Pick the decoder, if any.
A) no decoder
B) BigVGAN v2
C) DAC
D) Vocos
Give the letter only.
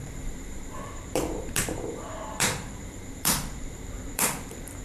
B